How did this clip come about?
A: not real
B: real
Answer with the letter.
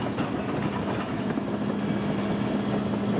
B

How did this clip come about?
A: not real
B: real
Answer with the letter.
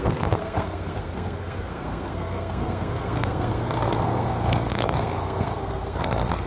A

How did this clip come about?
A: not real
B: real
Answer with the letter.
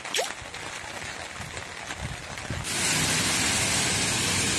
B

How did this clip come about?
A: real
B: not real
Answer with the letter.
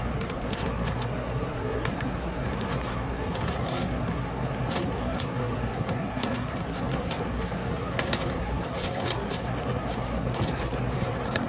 B